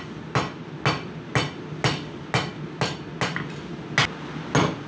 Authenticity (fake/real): real